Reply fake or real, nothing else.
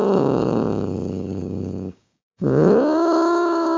fake